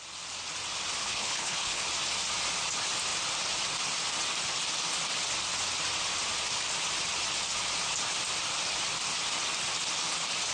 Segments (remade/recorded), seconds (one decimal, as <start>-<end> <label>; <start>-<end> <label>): 0.0-1.0 recorded; 1.0-1.8 remade; 1.8-10.5 recorded